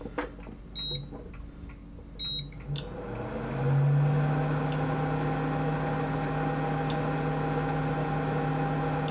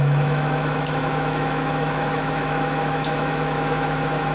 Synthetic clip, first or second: second